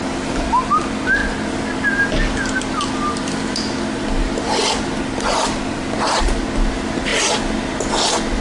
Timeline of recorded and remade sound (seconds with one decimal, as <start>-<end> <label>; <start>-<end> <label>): 0.0-8.4 recorded